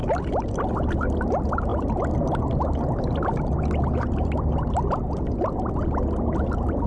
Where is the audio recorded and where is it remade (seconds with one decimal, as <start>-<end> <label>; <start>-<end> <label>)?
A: 0.0-6.9 recorded